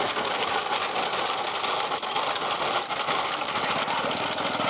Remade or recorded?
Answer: recorded